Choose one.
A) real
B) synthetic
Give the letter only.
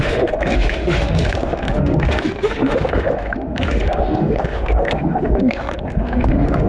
B